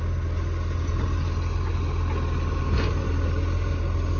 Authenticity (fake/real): real